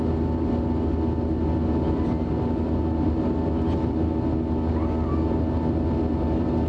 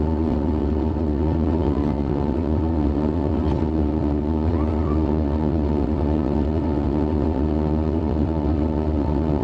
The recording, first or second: first